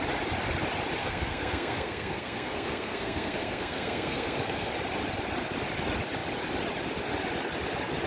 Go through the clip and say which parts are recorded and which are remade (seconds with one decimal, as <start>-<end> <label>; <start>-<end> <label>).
0.0-1.0 recorded; 1.0-4.7 remade; 4.7-8.1 recorded